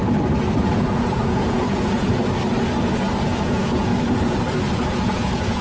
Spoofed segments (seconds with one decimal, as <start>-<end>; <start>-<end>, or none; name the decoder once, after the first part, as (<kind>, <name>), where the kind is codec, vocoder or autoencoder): 0.6-2.2 (vocoder, Vocos); 3.1-3.9; 4.9-5.6